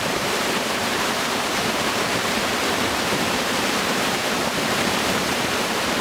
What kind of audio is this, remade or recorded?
remade